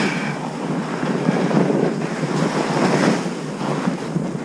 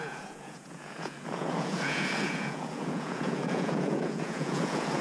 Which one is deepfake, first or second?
second